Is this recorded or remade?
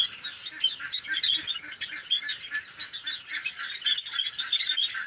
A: recorded